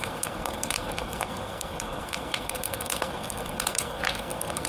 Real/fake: fake